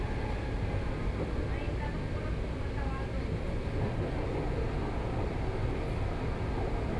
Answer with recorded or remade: recorded